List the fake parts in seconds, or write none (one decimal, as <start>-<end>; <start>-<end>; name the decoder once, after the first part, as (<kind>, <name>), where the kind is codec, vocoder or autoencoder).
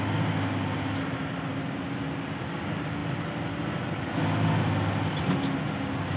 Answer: none